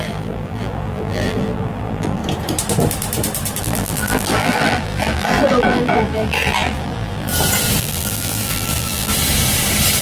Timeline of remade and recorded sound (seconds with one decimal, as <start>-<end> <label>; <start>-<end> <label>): 0.0-2.2 remade; 2.2-3.6 recorded; 3.6-7.3 remade; 7.3-7.8 recorded; 7.8-9.1 remade; 9.1-10.0 recorded